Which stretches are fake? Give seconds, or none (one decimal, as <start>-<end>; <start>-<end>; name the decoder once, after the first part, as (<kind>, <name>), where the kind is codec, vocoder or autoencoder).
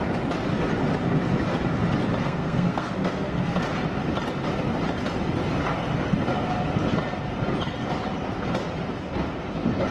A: 2.2-3.4 (codec, SNAC)